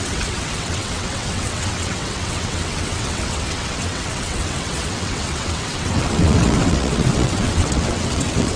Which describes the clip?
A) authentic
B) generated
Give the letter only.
B